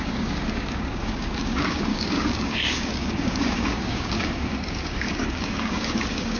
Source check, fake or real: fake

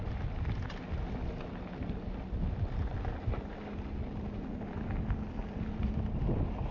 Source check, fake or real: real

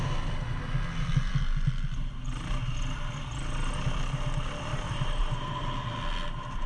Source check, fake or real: real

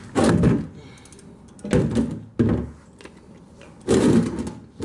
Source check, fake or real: real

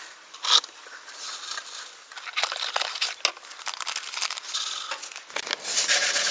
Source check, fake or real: real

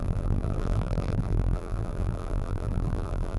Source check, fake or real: fake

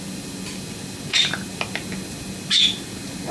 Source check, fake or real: real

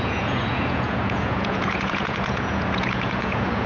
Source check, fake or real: fake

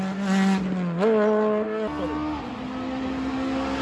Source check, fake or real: real